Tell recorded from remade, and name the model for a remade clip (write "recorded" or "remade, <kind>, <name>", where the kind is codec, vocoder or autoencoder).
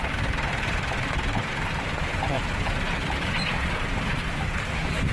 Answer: remade, vocoder, BigVGAN v2